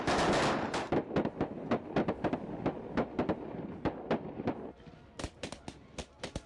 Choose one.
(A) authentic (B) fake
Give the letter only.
A